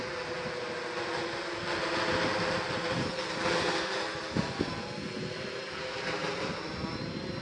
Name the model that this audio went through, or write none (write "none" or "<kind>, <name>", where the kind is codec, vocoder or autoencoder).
none